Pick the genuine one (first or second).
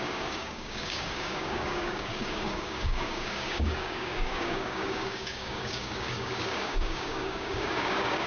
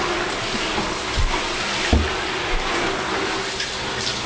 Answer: second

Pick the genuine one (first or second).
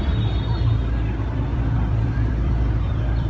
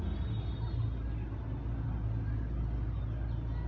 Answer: second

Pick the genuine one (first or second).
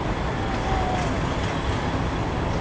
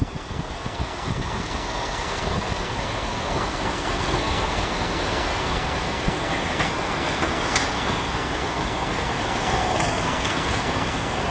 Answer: first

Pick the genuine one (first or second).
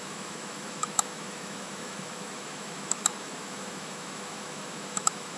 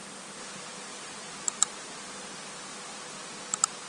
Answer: second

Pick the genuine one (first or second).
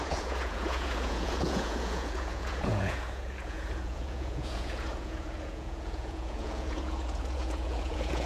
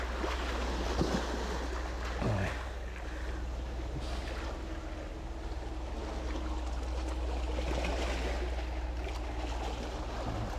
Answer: second